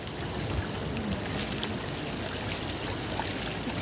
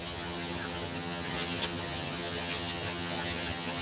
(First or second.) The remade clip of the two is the second